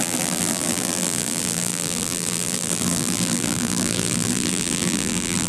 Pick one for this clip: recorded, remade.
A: remade